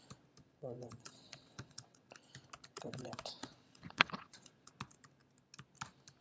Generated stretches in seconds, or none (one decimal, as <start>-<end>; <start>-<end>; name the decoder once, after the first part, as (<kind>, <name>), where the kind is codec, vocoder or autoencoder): 0.4-2.1 (vocoder, WaveNeXt); 2.7-4.7

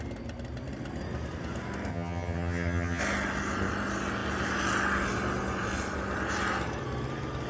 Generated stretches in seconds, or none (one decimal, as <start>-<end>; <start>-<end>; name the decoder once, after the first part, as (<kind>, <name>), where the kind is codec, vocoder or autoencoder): 1.9-3.0 (vocoder, HiFi-GAN)